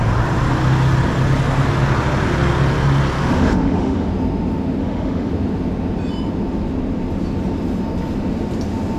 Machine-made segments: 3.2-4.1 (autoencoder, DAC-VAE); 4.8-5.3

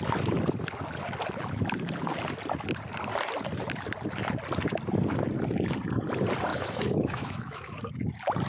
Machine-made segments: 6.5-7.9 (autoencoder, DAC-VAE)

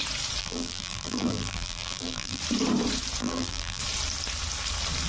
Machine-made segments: 0.4-2.4 (vocoder, BigVGAN v2); 3.2-3.8

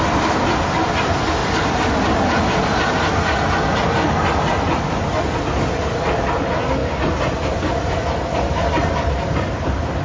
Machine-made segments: none